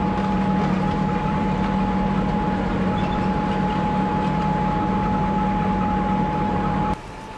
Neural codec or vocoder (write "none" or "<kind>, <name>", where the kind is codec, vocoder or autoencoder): none